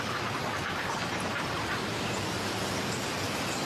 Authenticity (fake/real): real